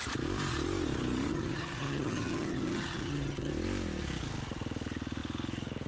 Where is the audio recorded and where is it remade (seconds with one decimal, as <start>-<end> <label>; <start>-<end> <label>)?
0.0-1.3 recorded; 1.3-3.5 remade; 3.5-5.9 recorded